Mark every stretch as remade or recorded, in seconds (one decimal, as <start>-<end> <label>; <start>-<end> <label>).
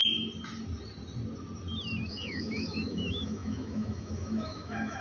0.0-2.1 recorded; 2.1-5.0 remade